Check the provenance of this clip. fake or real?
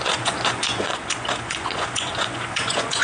fake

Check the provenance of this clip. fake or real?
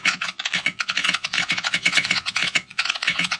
fake